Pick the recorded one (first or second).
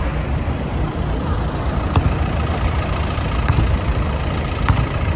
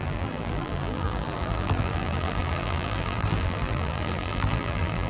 first